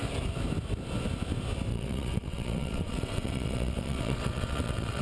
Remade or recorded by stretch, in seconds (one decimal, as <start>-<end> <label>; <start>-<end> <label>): 0.0-1.7 recorded; 1.7-5.0 remade